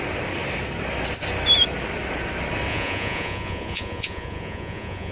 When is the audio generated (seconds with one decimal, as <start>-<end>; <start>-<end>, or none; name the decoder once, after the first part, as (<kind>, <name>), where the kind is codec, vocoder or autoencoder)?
2.7-5.1 (vocoder, Vocos)